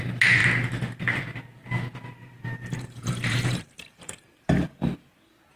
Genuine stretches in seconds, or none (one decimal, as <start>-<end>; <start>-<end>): 0.0-2.2; 4.8-5.6